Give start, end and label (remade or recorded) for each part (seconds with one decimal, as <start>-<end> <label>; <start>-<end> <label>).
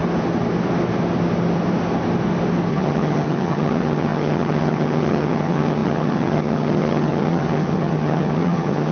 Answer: 0.0-2.7 recorded; 2.7-8.9 remade